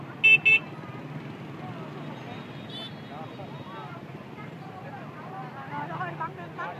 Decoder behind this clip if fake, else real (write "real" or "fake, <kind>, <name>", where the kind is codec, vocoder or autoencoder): real